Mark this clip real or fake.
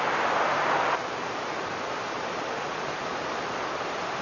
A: real